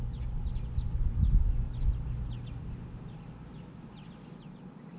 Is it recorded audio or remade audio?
recorded